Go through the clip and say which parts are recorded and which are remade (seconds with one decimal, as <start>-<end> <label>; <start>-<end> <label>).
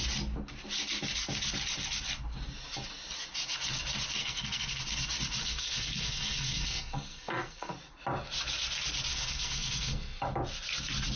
0.0-4.2 recorded; 4.2-4.8 remade; 4.8-5.4 recorded; 5.4-7.7 remade; 7.7-9.1 recorded; 9.1-10.2 remade; 10.2-11.2 recorded